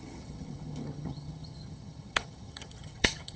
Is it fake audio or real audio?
fake